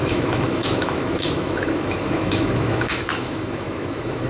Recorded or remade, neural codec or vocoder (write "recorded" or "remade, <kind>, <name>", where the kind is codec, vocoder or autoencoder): remade, autoencoder, DAC-VAE